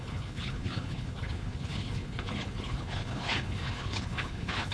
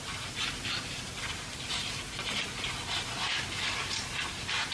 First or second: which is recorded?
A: second